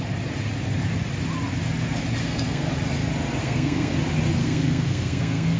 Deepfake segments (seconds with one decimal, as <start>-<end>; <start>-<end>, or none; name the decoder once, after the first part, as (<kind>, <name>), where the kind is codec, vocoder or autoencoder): 2.2-2.7 (codec, SNAC); 3.4-3.9; 4.4-5.6